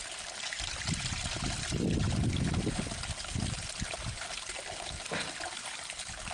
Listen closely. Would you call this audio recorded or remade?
recorded